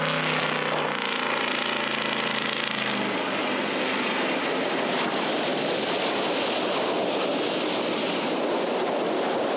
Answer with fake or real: real